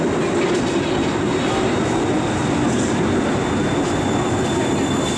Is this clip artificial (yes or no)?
no